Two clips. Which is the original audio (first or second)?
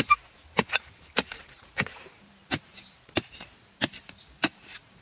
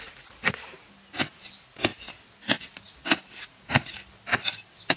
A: second